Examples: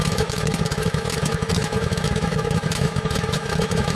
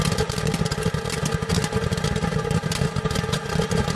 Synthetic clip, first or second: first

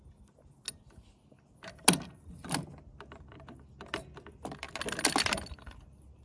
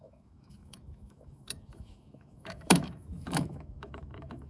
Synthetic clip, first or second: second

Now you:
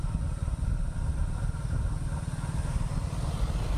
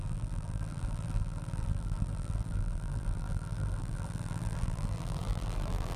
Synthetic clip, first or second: second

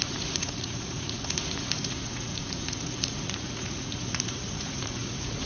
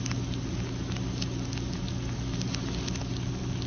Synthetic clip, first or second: first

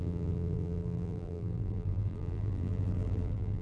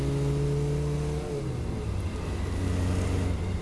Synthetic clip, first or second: first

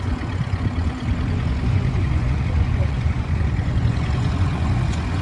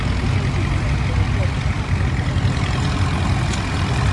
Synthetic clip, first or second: first